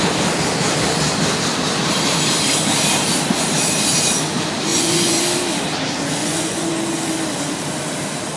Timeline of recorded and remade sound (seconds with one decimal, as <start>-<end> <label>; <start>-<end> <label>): 0.0-4.7 recorded; 4.7-5.2 remade; 5.2-6.2 recorded; 6.2-6.7 remade; 6.7-8.4 recorded